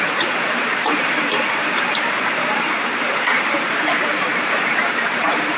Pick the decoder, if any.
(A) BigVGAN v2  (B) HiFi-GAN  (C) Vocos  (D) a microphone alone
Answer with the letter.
A